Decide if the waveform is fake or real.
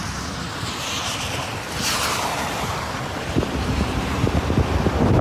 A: fake